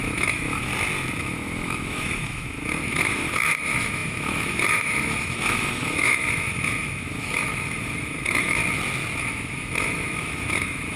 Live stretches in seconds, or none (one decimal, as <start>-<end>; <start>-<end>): 0.7-1.2; 8.6-9.2